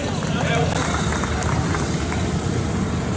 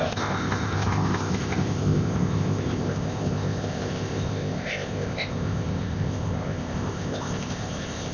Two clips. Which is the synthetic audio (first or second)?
second